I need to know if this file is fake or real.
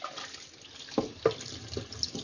real